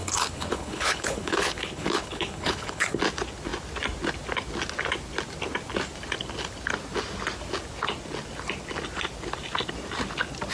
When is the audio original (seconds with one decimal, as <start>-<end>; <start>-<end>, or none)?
3.0-10.5